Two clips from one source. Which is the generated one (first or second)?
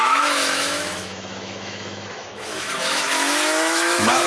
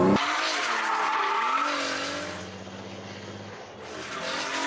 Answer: first